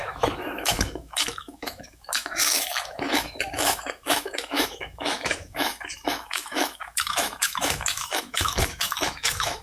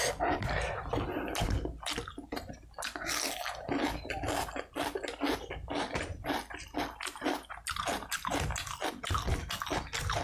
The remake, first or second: first